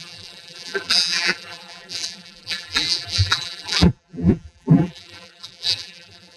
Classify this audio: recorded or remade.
remade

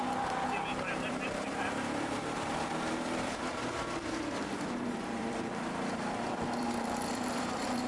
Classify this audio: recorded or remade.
remade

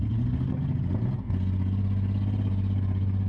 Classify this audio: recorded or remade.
recorded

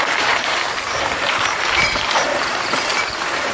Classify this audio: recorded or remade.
remade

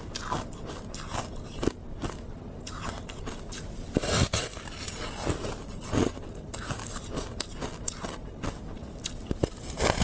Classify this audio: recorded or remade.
recorded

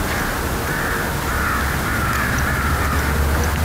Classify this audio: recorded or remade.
recorded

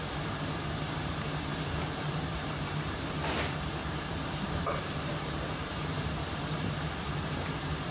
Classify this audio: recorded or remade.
remade